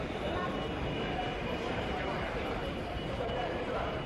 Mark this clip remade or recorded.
remade